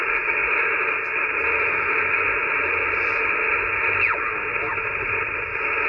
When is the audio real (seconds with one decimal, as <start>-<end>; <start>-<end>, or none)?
0.0-5.9